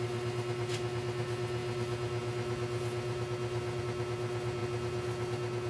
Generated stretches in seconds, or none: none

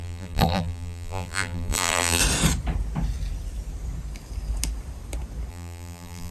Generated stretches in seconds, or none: 0.0-2.2 (vocoder, BigVGAN v2); 5.5-6.3

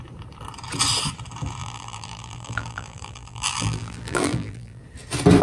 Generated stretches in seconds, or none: 1.6-4.8 (vocoder, BigVGAN v2)